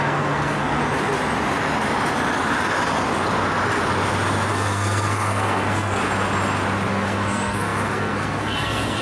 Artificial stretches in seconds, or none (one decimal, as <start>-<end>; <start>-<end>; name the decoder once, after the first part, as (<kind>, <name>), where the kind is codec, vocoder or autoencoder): 0.0-0.8 (codec, SNAC); 4.5-6.0; 6.9-9.0